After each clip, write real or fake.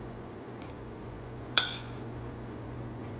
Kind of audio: fake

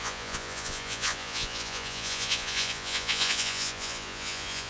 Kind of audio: fake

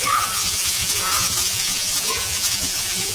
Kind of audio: fake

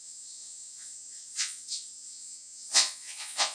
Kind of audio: fake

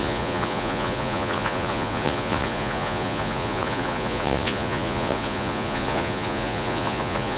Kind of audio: fake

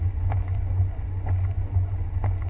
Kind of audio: fake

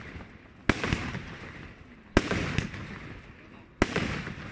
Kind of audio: real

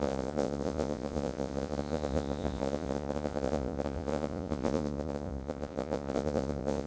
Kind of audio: fake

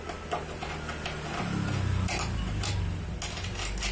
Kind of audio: real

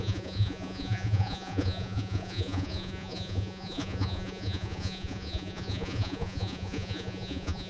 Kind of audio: fake